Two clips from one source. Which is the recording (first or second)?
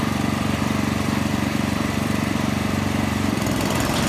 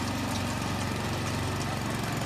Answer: second